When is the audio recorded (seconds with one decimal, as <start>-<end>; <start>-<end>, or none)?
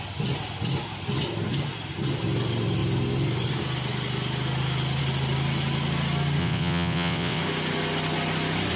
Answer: 0.0-6.4; 7.4-8.8